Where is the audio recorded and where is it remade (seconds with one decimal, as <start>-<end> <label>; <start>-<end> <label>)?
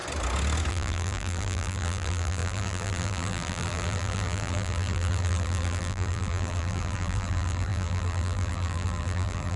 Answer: 0.0-0.7 recorded; 0.7-9.6 remade